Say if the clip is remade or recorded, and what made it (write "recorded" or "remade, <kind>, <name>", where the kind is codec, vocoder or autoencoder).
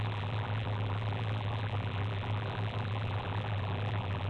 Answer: remade, vocoder, BigVGAN v2